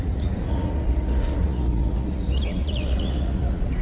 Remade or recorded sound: remade